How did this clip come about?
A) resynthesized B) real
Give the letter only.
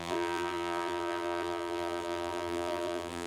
A